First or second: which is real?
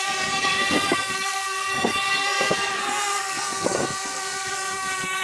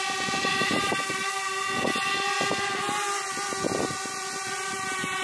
second